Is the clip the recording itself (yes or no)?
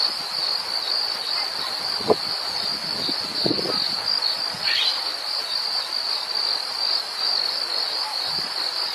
yes